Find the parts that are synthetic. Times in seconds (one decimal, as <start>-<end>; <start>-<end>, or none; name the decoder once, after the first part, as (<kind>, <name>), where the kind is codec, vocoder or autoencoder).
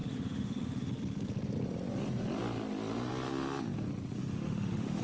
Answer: 0.0-0.9 (autoencoder, DAC-VAE); 4.2-5.0